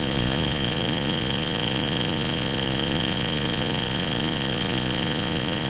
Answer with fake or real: fake